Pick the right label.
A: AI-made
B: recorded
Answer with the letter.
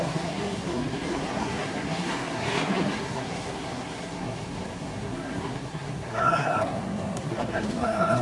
A